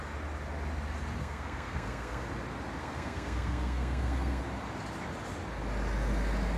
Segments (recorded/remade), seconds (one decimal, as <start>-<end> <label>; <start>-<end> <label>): 0.0-1.2 recorded; 1.2-2.2 remade; 2.2-2.8 recorded; 2.8-4.4 remade; 4.4-6.6 recorded